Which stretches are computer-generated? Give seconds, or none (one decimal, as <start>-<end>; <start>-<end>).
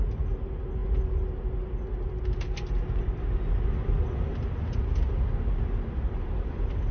none